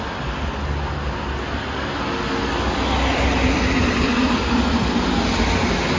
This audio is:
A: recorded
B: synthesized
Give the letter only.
A